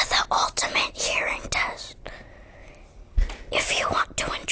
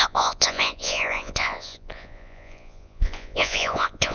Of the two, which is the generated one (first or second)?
second